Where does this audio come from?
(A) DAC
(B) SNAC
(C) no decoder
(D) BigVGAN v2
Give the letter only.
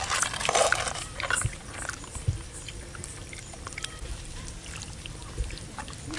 D